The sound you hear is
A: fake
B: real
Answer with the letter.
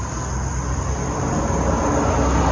B